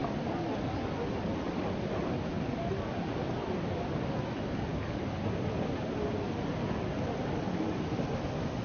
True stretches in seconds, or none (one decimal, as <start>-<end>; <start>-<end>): 0.0-8.6